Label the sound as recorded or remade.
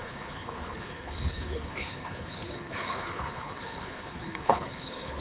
remade